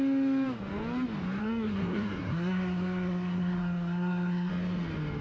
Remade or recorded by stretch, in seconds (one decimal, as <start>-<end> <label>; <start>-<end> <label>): 0.0-1.4 recorded; 1.4-4.5 remade; 4.5-5.2 recorded

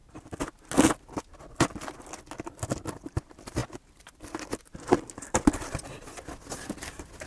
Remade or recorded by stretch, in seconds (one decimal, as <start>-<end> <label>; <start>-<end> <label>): 0.0-7.3 recorded

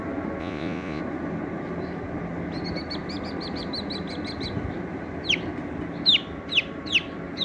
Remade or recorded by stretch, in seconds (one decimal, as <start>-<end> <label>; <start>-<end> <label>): 0.0-0.4 recorded; 0.4-1.0 remade; 1.0-7.4 recorded

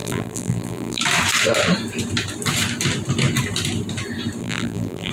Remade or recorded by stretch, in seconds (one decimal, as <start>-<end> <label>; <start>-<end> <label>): 0.0-1.0 remade; 1.0-4.4 recorded; 4.4-5.1 remade

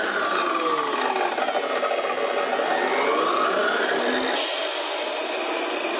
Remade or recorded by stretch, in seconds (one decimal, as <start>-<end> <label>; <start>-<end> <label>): 0.0-6.0 recorded

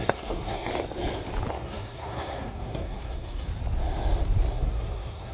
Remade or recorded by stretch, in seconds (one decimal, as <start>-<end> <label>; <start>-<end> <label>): 0.0-0.7 remade; 0.7-1.5 recorded; 1.5-3.5 remade; 3.5-4.5 recorded; 4.5-5.3 remade

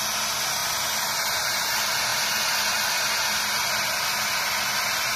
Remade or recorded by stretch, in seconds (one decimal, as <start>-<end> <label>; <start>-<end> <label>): 0.0-5.2 recorded